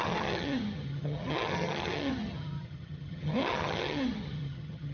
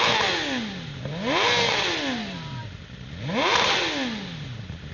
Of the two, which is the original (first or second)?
second